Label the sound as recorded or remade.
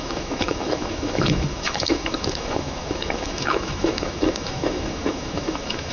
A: remade